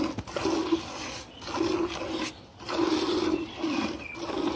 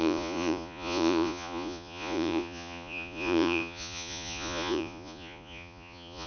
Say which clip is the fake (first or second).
second